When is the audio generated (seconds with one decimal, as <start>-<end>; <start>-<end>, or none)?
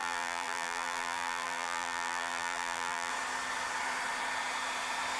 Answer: 0.0-3.1